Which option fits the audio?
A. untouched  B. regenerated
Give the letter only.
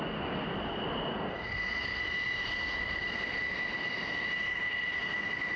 A